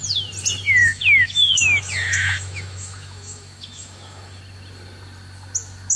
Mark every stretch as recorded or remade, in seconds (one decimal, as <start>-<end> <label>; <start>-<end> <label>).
0.0-0.8 recorded; 0.8-4.4 remade; 4.4-6.0 recorded

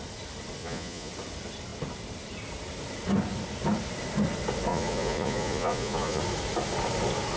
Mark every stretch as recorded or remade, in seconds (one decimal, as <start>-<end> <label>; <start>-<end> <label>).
0.0-0.6 recorded; 0.6-1.1 remade; 1.1-4.7 recorded; 4.7-6.2 remade; 6.2-7.4 recorded

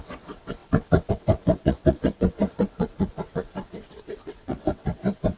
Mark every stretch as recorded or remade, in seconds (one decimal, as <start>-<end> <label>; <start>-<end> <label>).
0.0-5.4 remade

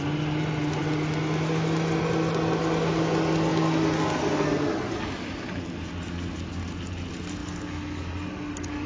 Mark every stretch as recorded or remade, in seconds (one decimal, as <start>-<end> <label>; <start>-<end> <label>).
0.0-8.9 recorded